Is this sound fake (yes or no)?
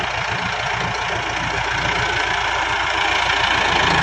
no